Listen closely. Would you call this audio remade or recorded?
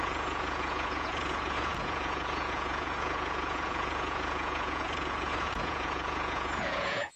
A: remade